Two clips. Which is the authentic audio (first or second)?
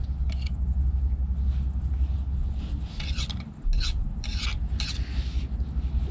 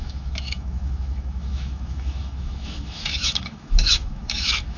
first